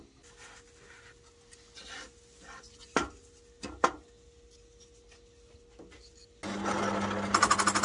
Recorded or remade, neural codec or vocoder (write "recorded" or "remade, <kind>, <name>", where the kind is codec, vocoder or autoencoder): recorded